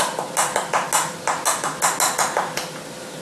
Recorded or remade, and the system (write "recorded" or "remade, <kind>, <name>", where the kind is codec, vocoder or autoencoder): recorded